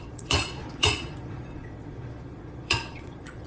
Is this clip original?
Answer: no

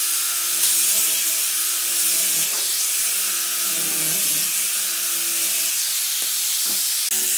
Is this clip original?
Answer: yes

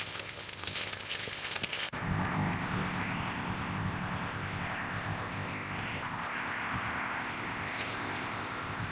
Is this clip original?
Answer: no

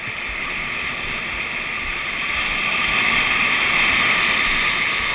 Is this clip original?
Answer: yes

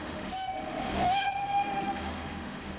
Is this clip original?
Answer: no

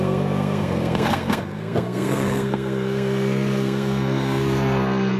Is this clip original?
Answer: no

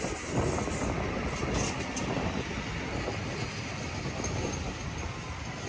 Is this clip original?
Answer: yes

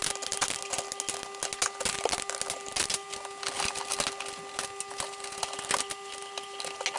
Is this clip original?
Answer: yes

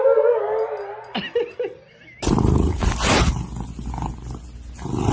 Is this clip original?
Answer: yes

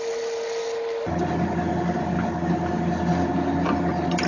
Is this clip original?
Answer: yes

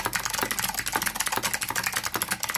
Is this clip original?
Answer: yes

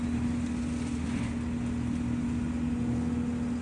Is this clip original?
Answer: yes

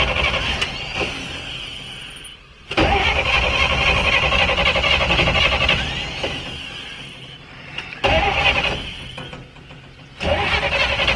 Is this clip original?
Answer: yes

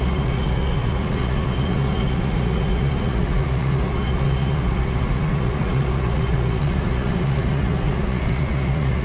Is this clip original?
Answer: no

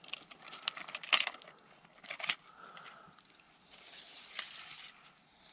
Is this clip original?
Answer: yes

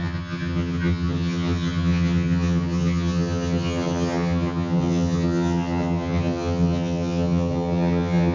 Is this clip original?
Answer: no